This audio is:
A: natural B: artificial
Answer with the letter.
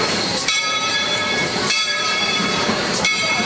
B